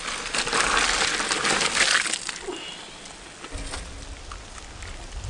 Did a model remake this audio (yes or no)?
no